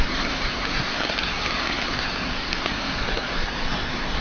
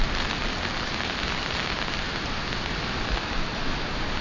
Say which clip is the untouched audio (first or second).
second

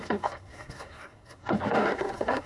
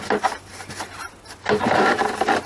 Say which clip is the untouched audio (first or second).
second